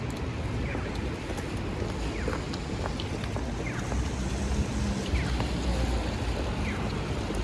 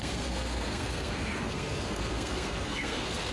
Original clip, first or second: first